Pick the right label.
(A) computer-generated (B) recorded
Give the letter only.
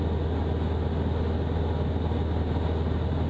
B